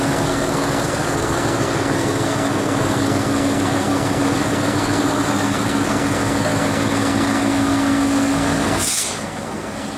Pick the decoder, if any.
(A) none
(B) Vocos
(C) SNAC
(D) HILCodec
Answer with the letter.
C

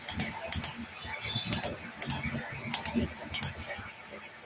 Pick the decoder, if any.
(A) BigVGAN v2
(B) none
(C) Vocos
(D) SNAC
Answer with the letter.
B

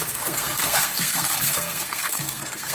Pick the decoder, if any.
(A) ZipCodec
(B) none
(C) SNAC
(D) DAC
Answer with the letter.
C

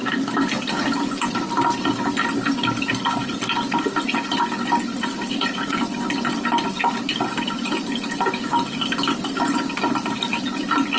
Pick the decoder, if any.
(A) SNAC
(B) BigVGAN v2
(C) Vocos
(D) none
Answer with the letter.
D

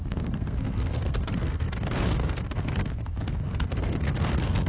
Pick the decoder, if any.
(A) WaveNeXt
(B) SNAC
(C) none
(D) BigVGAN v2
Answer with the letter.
B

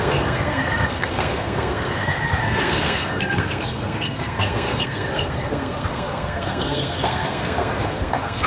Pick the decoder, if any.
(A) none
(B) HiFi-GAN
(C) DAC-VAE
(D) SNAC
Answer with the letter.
D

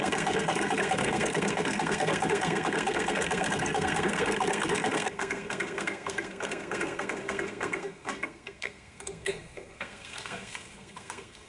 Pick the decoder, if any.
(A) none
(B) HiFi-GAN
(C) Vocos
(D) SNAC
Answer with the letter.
D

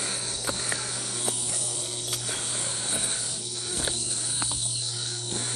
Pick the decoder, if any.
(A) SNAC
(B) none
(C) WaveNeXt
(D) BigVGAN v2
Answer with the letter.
A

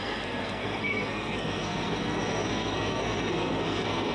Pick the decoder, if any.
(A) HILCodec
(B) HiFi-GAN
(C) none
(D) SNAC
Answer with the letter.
D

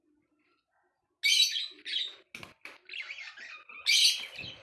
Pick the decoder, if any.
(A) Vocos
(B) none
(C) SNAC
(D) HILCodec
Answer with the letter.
B